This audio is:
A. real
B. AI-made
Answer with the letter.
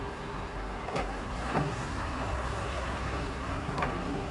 B